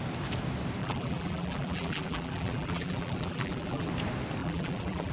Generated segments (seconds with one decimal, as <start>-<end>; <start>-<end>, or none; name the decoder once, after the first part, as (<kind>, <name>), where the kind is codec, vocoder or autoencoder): 0.8-3.9 (vocoder, BigVGAN v2); 4.4-5.1